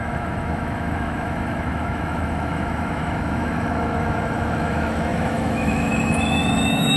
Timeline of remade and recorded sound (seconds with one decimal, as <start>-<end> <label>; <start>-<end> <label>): 0.0-7.0 remade